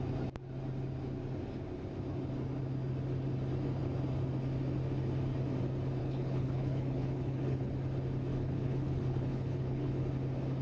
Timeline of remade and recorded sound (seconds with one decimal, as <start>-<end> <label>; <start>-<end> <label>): 0.0-6.0 recorded; 6.0-7.7 remade; 7.7-8.3 recorded; 8.3-10.1 remade; 10.1-10.6 recorded